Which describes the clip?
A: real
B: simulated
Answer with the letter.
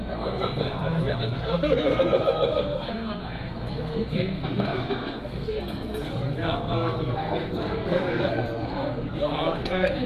B